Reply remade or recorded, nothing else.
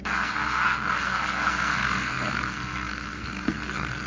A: remade